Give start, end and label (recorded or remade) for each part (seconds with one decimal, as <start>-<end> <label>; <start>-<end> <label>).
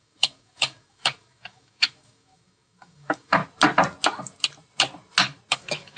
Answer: 0.0-3.4 remade; 3.4-5.5 recorded; 5.5-6.0 remade